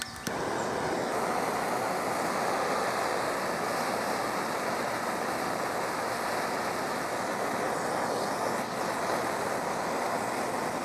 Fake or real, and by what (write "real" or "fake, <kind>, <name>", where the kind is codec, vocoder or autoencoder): real